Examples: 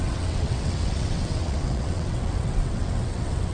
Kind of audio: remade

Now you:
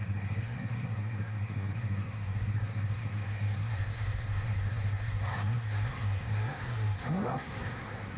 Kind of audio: remade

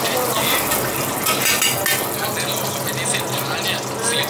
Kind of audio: recorded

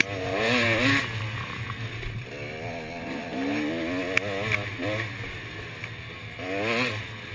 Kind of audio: recorded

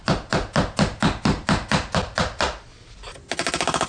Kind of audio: recorded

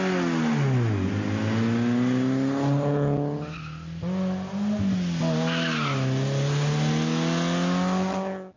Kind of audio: recorded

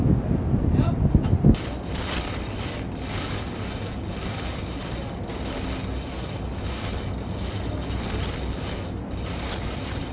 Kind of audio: recorded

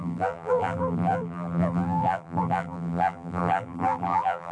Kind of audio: remade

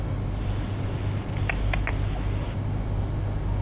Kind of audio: recorded